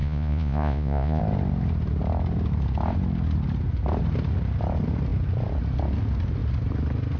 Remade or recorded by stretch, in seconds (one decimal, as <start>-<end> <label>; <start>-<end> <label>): 0.0-1.2 remade; 1.2-7.2 recorded